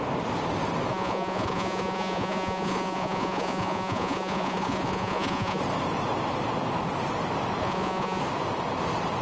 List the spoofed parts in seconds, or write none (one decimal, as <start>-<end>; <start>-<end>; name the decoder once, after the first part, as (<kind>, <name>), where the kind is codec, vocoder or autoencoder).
0.9-5.6 (vocoder, Vocos); 7.6-8.2